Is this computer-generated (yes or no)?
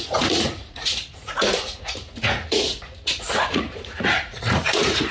yes